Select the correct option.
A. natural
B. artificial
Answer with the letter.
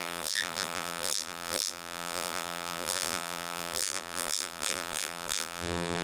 B